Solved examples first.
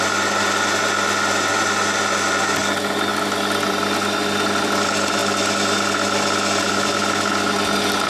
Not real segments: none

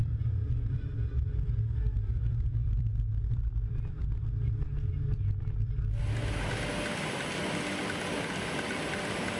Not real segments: 0.0-4.2

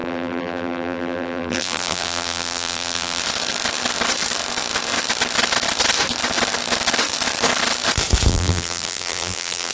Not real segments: 0.0-3.2; 8.3-9.7

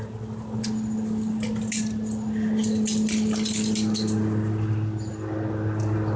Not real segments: 2.6-5.1

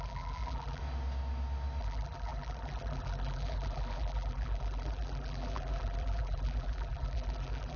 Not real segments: 0.0-0.8; 1.8-7.8

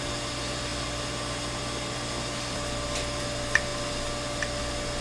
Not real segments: none